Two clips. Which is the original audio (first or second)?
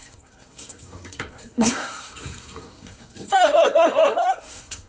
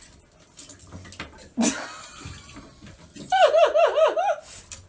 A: second